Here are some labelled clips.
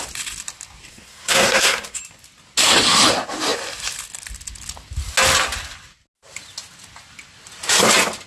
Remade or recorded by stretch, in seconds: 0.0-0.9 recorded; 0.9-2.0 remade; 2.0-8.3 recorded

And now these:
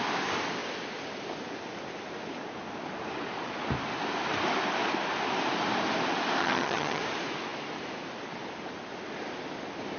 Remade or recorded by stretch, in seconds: 0.0-6.4 recorded; 6.4-7.0 remade; 7.0-10.0 recorded

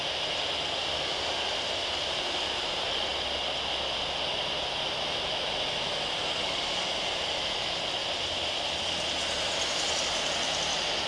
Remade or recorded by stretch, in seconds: 0.0-8.0 recorded; 8.0-8.8 remade; 8.8-11.1 recorded